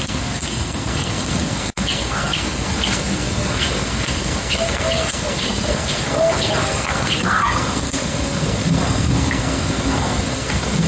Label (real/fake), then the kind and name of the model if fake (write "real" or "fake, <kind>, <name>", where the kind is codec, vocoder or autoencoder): fake, codec, SNAC